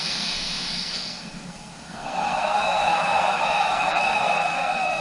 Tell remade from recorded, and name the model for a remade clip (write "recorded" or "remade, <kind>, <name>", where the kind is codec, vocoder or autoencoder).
remade, codec, SNAC